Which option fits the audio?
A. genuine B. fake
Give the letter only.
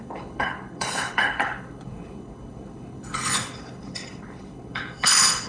B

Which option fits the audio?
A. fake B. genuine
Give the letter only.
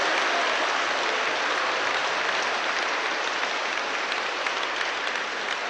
B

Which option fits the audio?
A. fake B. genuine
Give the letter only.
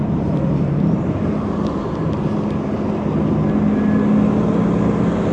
B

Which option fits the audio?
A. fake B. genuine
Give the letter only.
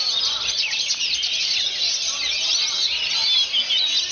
B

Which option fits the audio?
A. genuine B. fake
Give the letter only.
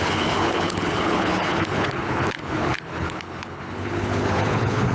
B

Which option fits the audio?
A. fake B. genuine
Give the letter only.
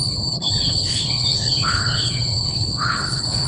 A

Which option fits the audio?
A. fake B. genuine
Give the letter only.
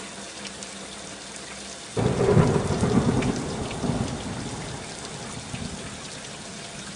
B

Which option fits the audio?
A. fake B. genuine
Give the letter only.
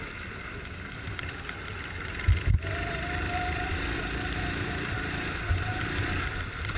B